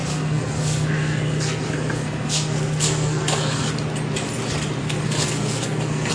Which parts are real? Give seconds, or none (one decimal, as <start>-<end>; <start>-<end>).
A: 3.7-4.8